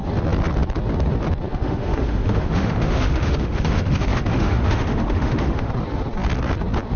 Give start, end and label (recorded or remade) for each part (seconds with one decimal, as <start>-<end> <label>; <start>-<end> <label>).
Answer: 0.0-1.5 recorded; 1.5-5.7 remade; 5.7-7.0 recorded